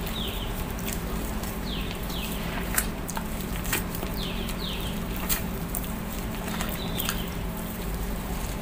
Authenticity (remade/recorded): remade